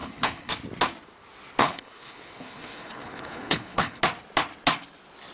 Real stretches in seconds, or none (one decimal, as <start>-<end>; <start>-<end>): 0.5-1.6; 4.0-5.3